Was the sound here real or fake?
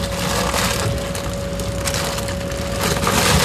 real